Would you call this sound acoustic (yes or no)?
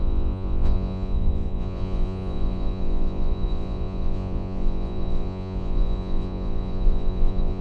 no